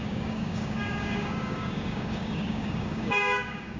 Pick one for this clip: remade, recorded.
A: remade